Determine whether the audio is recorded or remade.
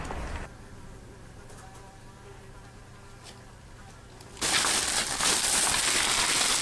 recorded